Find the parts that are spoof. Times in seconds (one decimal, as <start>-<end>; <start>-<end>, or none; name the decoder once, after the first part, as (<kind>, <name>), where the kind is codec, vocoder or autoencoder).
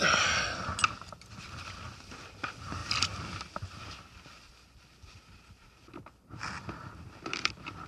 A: none